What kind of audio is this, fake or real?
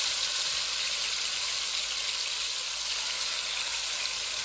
real